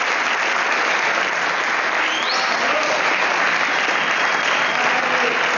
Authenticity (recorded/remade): recorded